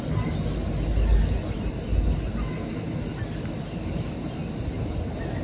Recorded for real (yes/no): yes